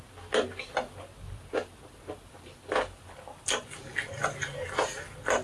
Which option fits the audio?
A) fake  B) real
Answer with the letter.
B